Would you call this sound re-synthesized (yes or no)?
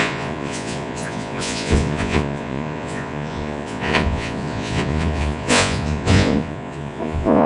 yes